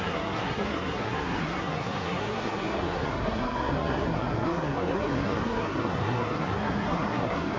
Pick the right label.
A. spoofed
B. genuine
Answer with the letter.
A